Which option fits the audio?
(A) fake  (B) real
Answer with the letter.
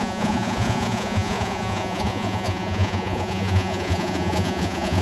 A